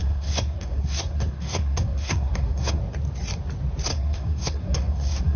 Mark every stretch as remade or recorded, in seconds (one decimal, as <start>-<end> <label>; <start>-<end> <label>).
0.0-2.8 remade; 2.8-3.9 recorded; 3.9-5.4 remade